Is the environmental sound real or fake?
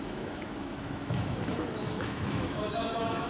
fake